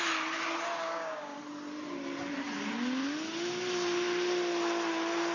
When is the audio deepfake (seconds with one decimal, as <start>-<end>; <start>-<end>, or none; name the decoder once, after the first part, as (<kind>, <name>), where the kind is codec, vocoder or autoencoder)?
0.8-1.4 (codec, DAC)